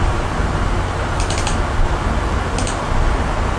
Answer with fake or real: real